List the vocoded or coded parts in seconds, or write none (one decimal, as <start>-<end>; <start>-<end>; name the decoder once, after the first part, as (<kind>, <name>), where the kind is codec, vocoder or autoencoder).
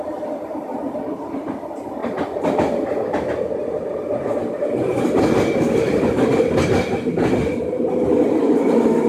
none